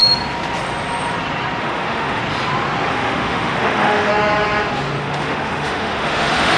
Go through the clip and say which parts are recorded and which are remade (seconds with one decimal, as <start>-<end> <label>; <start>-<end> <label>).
0.0-1.6 recorded; 1.6-2.2 remade; 2.2-2.9 recorded; 2.9-4.1 remade; 4.1-5.0 recorded; 5.0-6.6 remade